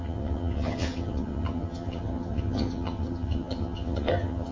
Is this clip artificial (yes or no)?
yes